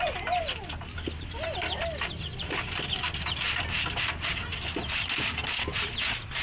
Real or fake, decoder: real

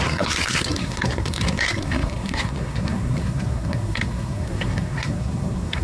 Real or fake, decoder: fake, codec, SNAC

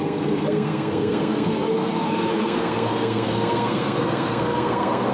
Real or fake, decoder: fake, codec, SNAC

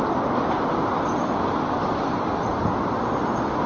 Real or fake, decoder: real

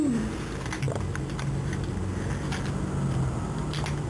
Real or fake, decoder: real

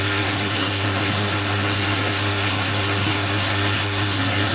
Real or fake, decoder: fake, codec, SNAC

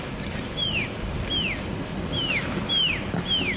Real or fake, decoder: real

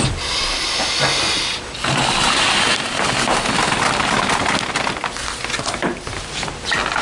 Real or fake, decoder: real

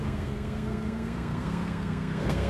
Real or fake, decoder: fake, codec, SNAC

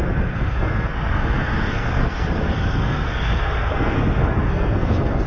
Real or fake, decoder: fake, codec, SNAC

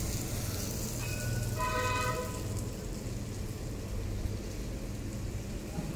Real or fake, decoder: real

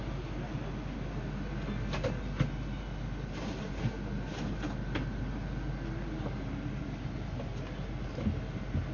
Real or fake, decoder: real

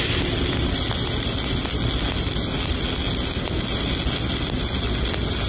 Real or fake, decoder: real